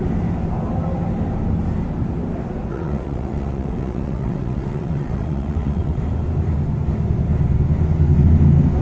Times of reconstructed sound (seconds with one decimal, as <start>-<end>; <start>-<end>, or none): 2.7-6.0